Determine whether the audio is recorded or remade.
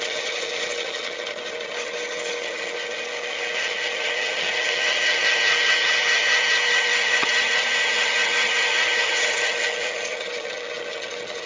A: remade